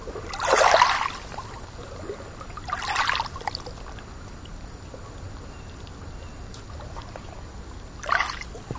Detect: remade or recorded recorded